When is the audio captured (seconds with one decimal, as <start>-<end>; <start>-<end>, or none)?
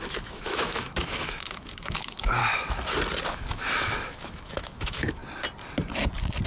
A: 2.4-3.3; 5.2-6.5